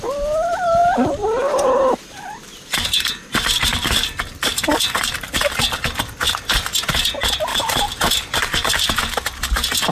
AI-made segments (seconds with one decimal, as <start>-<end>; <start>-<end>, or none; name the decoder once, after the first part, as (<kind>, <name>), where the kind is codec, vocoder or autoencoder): 0.8-5.4 (vocoder, BigVGAN v2); 7.5-9.0